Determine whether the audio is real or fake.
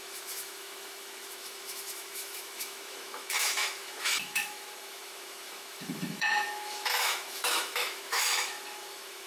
fake